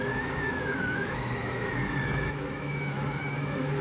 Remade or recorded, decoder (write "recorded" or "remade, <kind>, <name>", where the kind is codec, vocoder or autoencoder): remade, autoencoder, DAC-VAE